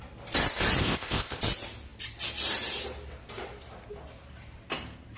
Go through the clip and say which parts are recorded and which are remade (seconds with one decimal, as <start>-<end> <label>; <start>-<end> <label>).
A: 0.0-0.8 recorded; 0.8-1.4 remade; 1.4-5.2 recorded